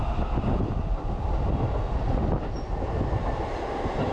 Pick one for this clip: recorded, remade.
recorded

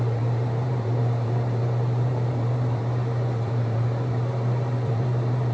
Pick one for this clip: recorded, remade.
remade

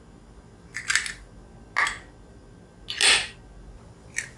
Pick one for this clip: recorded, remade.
recorded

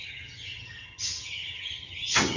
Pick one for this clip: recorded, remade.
remade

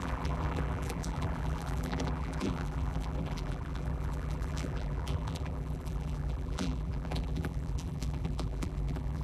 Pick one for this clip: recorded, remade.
remade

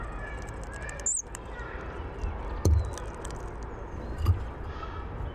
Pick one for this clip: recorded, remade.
recorded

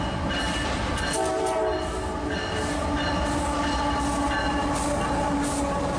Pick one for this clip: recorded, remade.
recorded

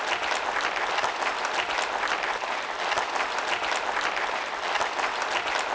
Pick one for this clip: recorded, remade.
recorded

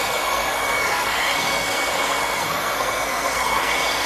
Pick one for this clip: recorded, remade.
remade